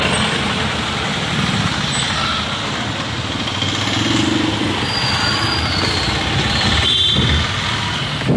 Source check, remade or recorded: recorded